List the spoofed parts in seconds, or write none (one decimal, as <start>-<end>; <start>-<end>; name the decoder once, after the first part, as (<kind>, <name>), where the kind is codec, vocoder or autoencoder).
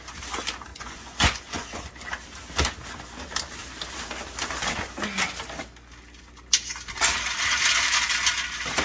0.7-1.9 (vocoder, Vocos)